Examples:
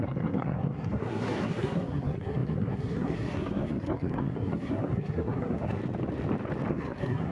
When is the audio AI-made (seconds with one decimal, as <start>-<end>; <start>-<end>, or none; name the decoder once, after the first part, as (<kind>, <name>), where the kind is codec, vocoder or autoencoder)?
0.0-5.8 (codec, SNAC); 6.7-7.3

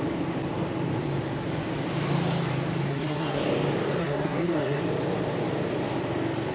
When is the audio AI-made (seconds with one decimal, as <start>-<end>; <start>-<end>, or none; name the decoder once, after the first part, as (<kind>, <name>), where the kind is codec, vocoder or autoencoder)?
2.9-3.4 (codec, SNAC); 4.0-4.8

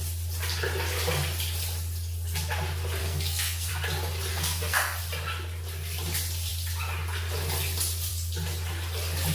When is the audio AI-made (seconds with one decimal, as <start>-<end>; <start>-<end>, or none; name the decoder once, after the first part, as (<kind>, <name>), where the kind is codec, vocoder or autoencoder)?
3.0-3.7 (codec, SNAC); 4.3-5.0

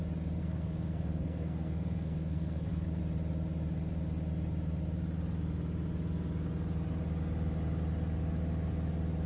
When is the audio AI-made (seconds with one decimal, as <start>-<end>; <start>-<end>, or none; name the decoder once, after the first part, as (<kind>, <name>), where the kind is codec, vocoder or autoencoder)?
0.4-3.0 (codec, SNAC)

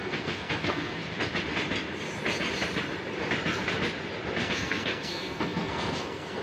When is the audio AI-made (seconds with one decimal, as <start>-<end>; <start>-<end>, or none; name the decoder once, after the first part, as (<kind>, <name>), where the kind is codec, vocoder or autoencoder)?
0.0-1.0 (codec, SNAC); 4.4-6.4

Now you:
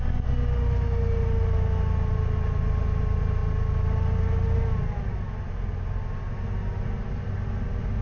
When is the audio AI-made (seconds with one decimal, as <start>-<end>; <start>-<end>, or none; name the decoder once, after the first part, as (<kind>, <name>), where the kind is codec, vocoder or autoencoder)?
none

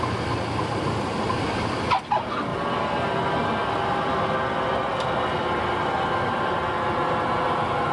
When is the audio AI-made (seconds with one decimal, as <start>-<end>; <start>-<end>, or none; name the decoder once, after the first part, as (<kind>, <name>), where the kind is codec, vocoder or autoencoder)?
none

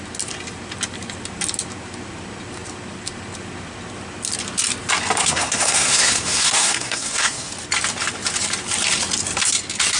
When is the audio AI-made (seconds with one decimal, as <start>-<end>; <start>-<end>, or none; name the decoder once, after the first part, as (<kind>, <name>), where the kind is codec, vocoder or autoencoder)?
5.2-7.5 (codec, SNAC)